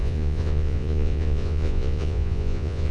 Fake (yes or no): yes